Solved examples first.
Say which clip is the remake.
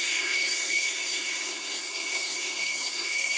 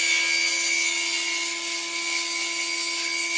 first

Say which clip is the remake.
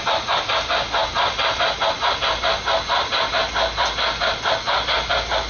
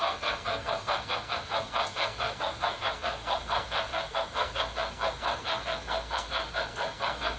second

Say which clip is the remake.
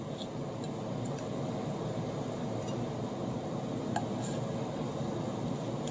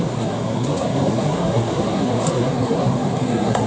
second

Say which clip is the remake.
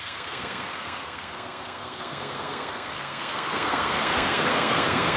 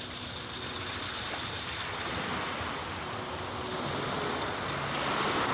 first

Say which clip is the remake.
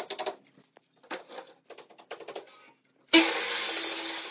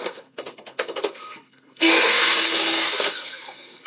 second